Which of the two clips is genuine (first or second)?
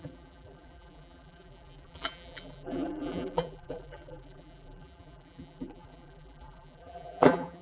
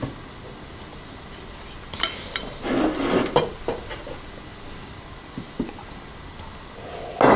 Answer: second